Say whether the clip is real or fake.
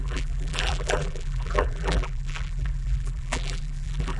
fake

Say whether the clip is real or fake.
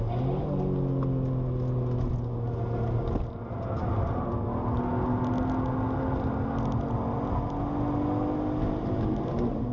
real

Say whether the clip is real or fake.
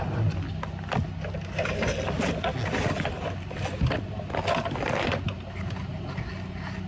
real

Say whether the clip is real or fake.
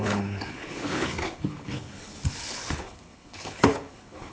fake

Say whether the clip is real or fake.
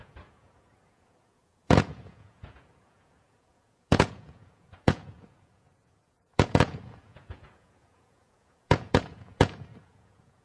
fake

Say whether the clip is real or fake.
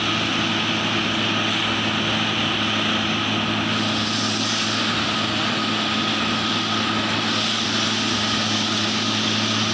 real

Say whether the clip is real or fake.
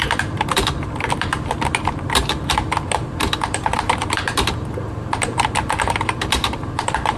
fake